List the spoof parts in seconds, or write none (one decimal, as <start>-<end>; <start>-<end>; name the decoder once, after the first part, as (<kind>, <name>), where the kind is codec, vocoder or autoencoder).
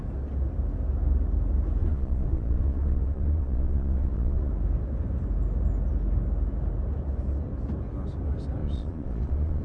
1.8-4.5 (vocoder, Vocos); 8.6-9.6